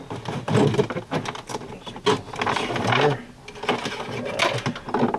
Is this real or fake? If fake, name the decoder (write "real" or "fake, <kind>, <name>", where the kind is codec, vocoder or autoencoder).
real